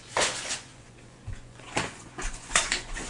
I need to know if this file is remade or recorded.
remade